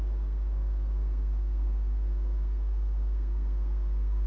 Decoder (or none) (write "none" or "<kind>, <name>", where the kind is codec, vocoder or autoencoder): codec, SNAC